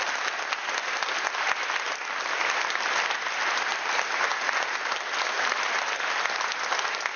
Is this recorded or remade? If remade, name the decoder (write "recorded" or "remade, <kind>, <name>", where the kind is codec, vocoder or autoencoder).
recorded